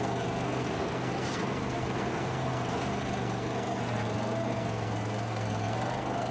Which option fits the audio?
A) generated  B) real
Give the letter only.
A